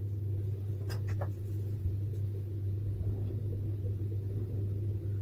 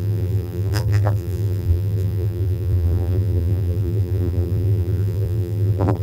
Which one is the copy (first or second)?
second